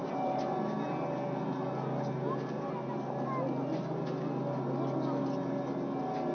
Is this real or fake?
real